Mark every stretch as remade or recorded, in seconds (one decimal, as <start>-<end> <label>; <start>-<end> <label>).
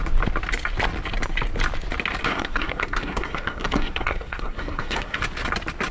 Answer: 0.0-2.2 recorded; 2.2-5.2 remade; 5.2-5.9 recorded